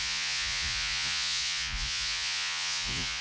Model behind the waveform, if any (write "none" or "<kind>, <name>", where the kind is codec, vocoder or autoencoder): vocoder, Vocos